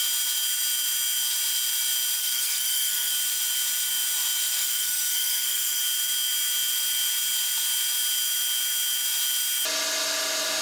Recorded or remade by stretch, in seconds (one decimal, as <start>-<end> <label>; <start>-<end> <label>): 0.0-2.2 recorded; 2.2-3.1 remade; 3.1-4.6 recorded; 4.6-5.8 remade; 5.8-10.6 recorded